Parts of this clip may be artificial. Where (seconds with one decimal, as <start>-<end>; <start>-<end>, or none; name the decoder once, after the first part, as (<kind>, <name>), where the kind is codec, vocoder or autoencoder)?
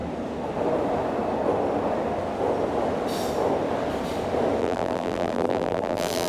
4.6-6.3 (vocoder, BigVGAN v2)